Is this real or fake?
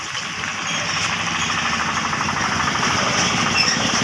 real